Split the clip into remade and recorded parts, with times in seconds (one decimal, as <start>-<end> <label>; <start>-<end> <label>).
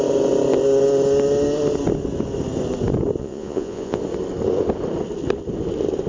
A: 0.0-3.2 recorded; 3.2-4.0 remade; 4.0-6.1 recorded